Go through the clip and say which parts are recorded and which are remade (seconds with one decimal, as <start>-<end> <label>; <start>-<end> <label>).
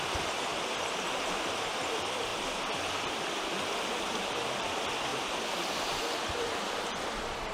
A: 0.0-0.5 remade; 0.5-1.4 recorded; 1.4-5.1 remade; 5.1-5.8 recorded; 5.8-7.5 remade